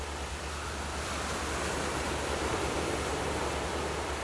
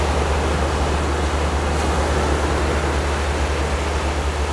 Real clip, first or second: second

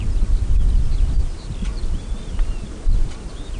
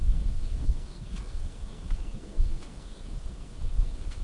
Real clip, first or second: first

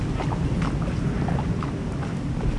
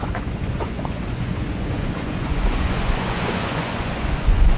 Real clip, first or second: first